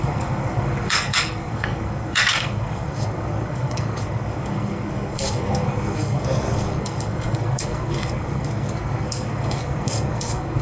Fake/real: fake